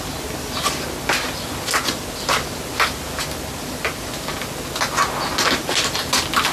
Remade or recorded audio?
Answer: recorded